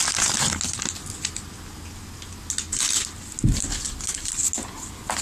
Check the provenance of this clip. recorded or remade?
recorded